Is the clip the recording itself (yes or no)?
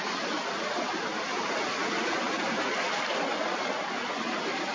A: yes